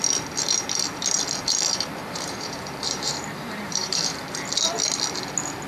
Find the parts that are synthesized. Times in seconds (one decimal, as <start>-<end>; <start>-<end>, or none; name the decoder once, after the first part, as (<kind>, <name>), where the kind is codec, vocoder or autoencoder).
2.0-4.3 (vocoder, BigVGAN v2)